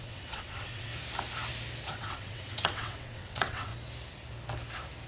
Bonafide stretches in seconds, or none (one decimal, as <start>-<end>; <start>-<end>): 0.9-1.9; 3.7-5.1